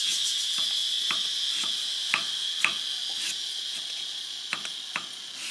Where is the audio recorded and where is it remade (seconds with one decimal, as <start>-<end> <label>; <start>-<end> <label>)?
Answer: 0.0-5.5 recorded